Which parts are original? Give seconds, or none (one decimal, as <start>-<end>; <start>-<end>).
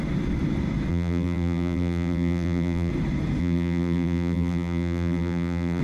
0.0-0.9; 2.9-3.4